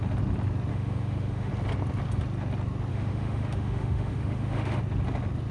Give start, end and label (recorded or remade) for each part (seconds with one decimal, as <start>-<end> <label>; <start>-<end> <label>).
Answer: 0.0-0.7 recorded; 0.7-1.5 remade; 1.5-2.9 recorded; 2.9-4.8 remade; 4.8-5.5 recorded